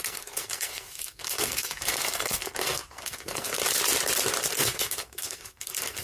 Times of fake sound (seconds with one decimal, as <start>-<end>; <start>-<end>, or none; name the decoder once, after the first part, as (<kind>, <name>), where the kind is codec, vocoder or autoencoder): 0.0-3.6 (codec, SNAC); 4.5-6.0